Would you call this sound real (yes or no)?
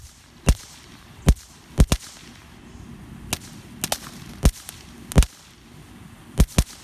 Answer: yes